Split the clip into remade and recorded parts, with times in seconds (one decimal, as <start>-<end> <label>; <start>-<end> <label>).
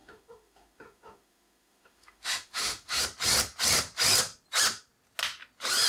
0.0-3.0 remade; 3.0-5.9 recorded